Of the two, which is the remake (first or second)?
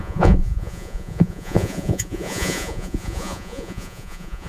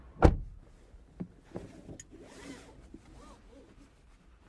first